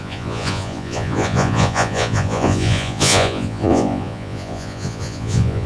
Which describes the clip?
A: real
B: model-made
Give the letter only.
B